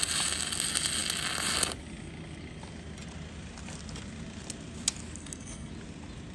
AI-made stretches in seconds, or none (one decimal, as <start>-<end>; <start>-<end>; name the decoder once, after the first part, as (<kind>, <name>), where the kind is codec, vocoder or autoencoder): 5.2-5.7 (codec, SNAC)